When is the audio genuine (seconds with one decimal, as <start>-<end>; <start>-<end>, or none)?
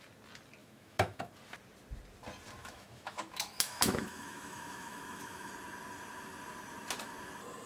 0.0-0.6; 1.3-2.6; 5.5-7.7